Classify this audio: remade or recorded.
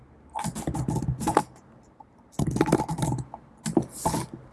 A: recorded